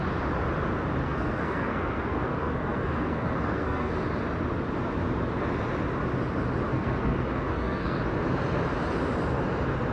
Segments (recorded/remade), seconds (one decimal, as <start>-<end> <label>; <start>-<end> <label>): 0.0-1.0 recorded; 1.0-3.9 remade; 3.9-6.7 recorded; 6.7-8.0 remade; 8.0-9.9 recorded